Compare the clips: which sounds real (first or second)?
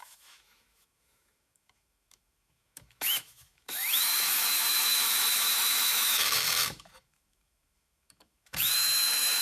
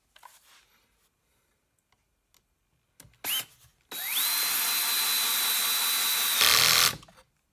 second